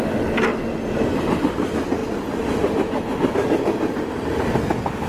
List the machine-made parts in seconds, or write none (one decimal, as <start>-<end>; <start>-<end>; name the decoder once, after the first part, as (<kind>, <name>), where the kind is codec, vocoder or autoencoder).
none